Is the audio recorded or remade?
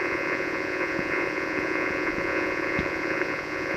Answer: remade